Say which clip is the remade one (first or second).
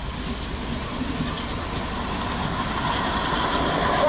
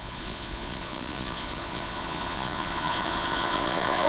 second